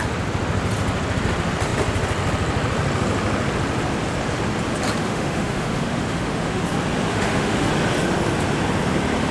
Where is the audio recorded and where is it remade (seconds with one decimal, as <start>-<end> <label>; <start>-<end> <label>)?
0.0-5.0 recorded; 5.0-6.6 remade; 6.6-7.1 recorded; 7.1-7.7 remade; 7.7-9.3 recorded